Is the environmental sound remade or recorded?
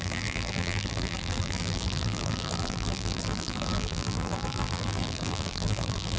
remade